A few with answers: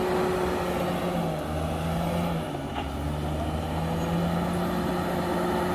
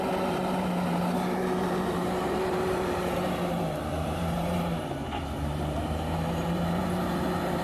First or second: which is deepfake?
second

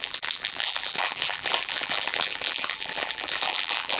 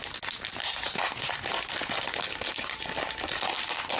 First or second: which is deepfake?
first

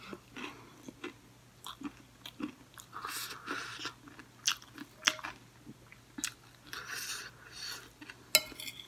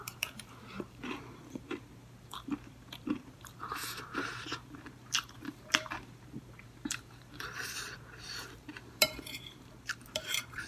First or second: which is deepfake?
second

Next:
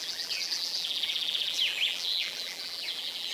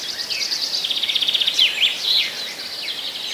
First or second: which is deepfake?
first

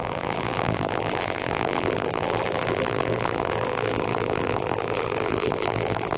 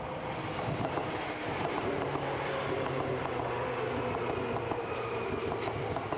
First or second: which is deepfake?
first